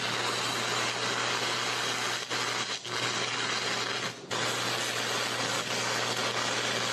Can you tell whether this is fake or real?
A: real